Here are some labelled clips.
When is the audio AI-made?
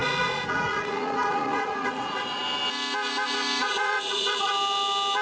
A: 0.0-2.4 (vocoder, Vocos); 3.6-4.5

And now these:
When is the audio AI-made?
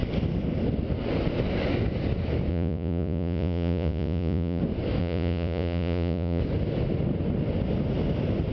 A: 2.5-4.6 (vocoder, Vocos); 5.0-6.4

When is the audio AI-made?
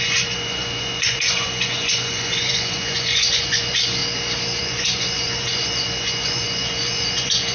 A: 0.0-4.0 (vocoder, Vocos); 4.6-7.5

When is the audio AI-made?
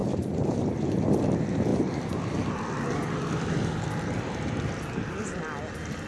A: none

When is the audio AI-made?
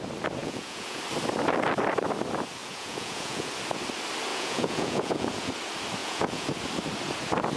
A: 0.4-1.0 (vocoder, Vocos); 2.6-3.5; 4.3-5.5; 6.0-6.5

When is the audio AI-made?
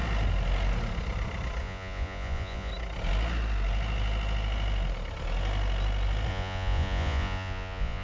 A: 1.6-2.7 (vocoder, Vocos); 6.3-8.0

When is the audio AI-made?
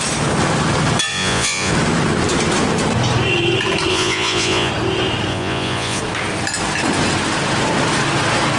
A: 1.1-1.7 (vocoder, Vocos); 3.9-4.7; 5.3-6.0